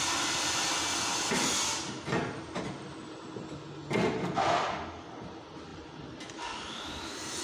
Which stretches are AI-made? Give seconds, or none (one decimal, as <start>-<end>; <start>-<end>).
5.7-7.4